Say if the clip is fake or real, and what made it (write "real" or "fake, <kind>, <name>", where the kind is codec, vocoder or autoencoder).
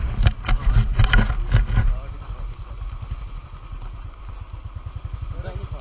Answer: real